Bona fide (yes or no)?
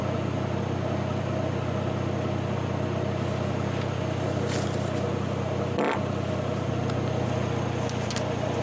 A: yes